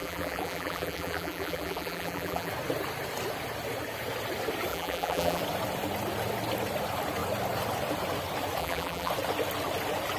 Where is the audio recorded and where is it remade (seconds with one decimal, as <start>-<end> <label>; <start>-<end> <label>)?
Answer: 0.0-2.5 remade; 2.5-4.7 recorded; 4.7-5.4 remade; 5.4-8.6 recorded; 8.6-9.1 remade; 9.1-10.2 recorded